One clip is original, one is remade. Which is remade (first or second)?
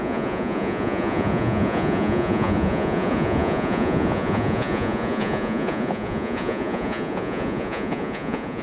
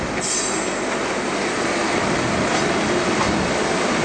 first